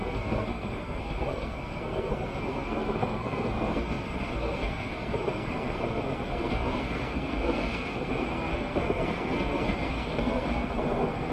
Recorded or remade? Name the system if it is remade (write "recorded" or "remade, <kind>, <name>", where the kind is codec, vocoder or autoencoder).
remade, codec, SNAC